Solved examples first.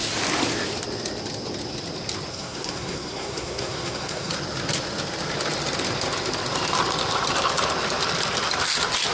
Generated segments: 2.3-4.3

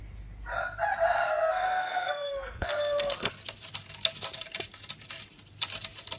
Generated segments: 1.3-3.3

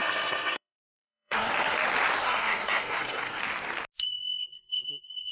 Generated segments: 0.0-1.5; 2.2-3.4; 4.4-5.3